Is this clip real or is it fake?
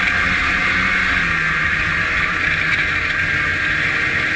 real